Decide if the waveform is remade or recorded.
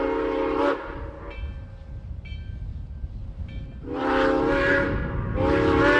recorded